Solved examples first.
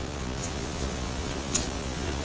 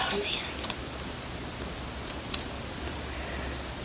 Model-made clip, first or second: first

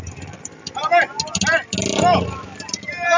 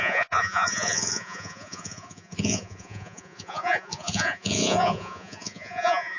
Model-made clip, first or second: second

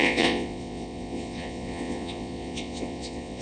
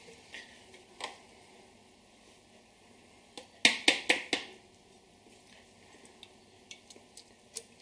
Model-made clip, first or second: first